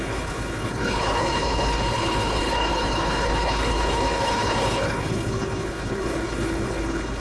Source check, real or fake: fake